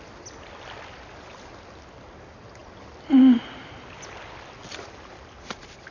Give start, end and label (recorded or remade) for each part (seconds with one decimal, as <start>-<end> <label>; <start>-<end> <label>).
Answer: 0.0-5.9 recorded